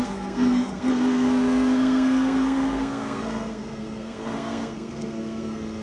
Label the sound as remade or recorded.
remade